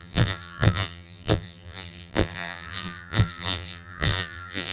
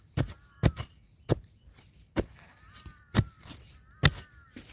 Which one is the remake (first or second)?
first